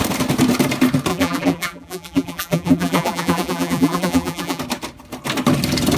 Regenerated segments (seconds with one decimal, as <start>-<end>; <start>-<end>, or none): 1.1-4.6